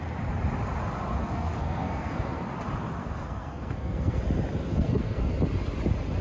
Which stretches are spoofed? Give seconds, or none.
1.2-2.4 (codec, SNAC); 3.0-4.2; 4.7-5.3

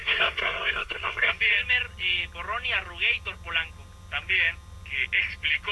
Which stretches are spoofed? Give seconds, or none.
0.0-1.3 (codec, SNAC)

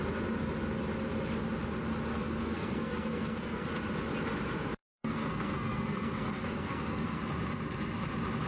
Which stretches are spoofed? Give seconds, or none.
2.1-3.7 (codec, SNAC); 4.8-7.2

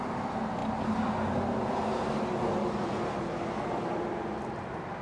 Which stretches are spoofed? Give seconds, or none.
none

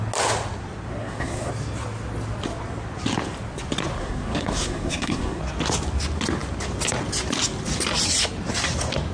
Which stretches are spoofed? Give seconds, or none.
0.9-1.5 (codec, SNAC); 4.0-5.4

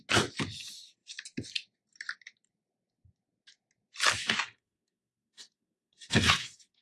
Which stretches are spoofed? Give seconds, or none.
4.2-6.8 (codec, SNAC)

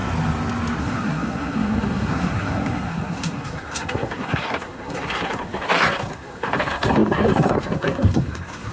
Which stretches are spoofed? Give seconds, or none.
0.8-8.7 (codec, SNAC)